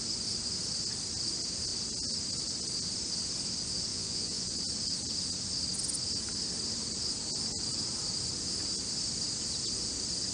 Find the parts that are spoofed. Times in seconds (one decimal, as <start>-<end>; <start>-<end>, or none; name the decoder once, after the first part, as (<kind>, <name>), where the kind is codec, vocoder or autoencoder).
3.9-4.6 (vocoder, Vocos)

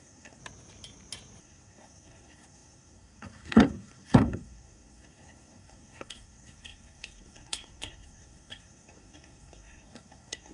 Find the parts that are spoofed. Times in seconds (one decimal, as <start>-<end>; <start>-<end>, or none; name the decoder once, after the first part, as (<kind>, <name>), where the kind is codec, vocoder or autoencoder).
0.0-0.4 (codec, SNAC); 1.4-10.5

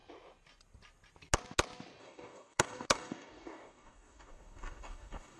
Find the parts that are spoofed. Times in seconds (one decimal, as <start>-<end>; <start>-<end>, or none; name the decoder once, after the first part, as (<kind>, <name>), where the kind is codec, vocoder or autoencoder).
2.0-5.4 (codec, DAC)

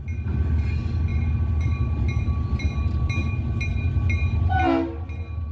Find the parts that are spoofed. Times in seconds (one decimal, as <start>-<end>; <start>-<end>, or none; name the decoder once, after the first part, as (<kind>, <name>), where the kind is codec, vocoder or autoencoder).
none

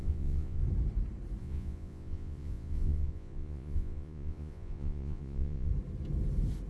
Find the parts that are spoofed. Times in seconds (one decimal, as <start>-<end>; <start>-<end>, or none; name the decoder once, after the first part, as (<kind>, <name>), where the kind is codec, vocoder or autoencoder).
0.0-0.6 (vocoder, Vocos); 1.4-5.7

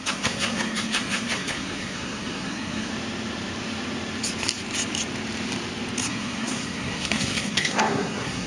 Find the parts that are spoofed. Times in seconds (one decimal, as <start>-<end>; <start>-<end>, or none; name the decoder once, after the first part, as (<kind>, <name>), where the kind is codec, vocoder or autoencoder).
0.0-2.9 (codec, SNAC); 6.0-8.5

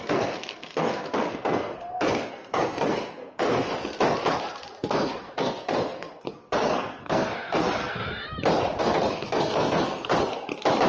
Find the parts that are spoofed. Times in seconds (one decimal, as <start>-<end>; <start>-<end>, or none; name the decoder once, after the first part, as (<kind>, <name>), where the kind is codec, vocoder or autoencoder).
0.0-3.7 (codec, SNAC); 4.9-8.0; 8.8-10.1